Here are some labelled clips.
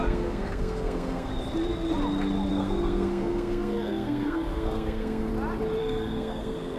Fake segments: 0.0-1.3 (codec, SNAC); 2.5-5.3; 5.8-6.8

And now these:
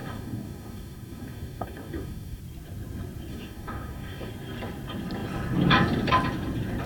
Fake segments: 0.0-2.4 (codec, DAC); 3.3-4.3

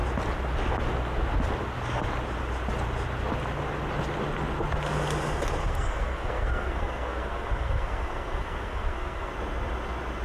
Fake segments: 5.6-9.3 (codec, SNAC)

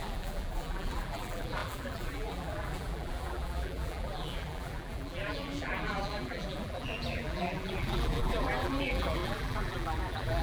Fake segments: 0.0-10.4 (vocoder, BigVGAN v2)